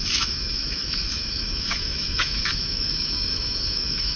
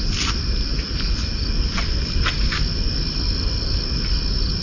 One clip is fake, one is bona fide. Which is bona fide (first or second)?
second